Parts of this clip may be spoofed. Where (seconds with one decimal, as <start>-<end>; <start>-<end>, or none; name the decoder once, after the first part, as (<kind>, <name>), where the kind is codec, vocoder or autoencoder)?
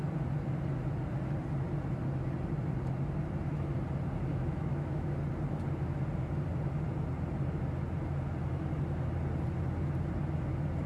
4.3-5.1 (autoencoder, DAC-VAE)